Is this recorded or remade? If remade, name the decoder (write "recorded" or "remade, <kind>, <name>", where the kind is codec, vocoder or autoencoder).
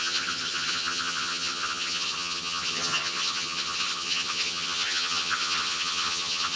remade, vocoder, HiFi-GAN